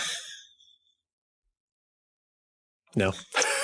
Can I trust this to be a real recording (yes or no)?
no